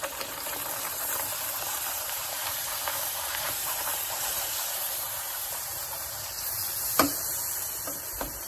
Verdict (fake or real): fake